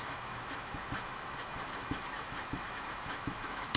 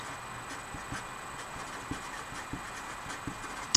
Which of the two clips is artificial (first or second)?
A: first